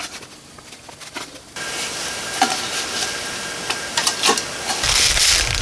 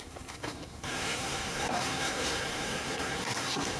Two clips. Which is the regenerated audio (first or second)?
second